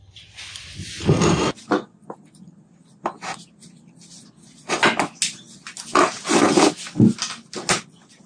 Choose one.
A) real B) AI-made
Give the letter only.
A